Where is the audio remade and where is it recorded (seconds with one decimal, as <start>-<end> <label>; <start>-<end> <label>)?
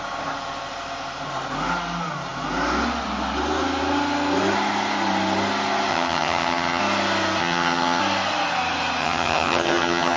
0.0-5.9 recorded; 5.9-6.8 remade; 6.8-7.4 recorded; 7.4-8.0 remade; 8.0-9.0 recorded; 9.0-10.2 remade